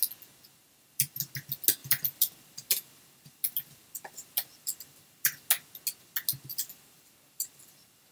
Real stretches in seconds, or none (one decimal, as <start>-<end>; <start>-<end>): 0.0-0.6; 1.3-1.8; 5.5-6.5